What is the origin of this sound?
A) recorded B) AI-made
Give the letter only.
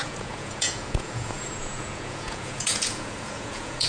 B